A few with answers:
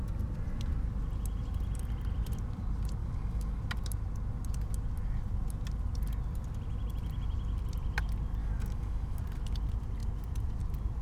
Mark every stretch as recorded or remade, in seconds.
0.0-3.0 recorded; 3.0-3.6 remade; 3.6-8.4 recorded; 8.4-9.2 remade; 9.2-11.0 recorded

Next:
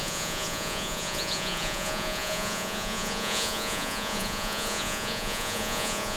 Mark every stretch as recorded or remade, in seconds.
0.0-6.2 remade